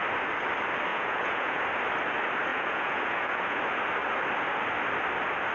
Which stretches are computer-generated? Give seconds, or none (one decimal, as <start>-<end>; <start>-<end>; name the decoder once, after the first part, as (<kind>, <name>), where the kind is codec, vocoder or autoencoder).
0.9-1.6 (vocoder, Vocos); 2.5-3.6